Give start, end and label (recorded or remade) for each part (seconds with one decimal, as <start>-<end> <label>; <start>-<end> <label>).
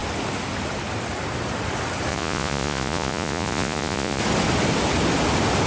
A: 0.0-2.1 recorded; 2.1-4.2 remade; 4.2-5.7 recorded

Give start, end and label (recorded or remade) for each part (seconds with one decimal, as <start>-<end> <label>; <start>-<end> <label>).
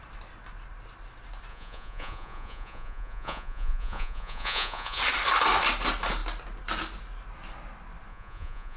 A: 0.0-1.5 recorded; 1.5-5.0 remade; 5.0-8.1 recorded; 8.1-8.8 remade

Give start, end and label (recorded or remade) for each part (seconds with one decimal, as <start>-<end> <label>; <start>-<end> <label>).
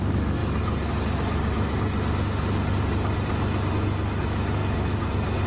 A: 0.0-5.5 recorded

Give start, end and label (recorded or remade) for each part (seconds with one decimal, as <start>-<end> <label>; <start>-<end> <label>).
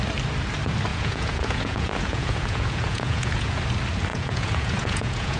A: 0.0-0.9 recorded; 0.9-3.6 remade; 3.6-4.1 recorded; 4.1-5.4 remade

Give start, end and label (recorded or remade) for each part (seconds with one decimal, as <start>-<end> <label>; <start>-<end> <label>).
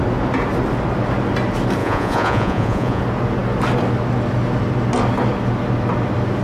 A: 0.0-1.8 recorded; 1.8-3.0 remade; 3.0-6.4 recorded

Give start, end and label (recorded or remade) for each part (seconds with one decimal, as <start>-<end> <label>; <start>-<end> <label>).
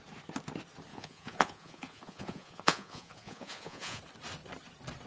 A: 0.0-0.9 recorded; 0.9-4.0 remade; 4.0-5.1 recorded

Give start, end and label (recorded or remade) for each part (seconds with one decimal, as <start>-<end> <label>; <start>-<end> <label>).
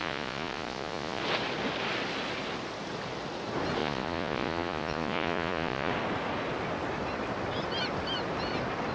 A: 0.0-1.2 remade; 1.2-3.8 recorded; 3.8-5.9 remade; 5.9-8.9 recorded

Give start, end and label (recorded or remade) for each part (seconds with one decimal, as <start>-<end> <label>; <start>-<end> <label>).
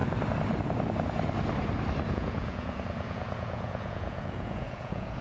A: 0.0-2.1 recorded; 2.1-5.2 remade